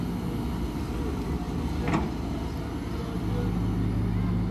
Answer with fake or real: real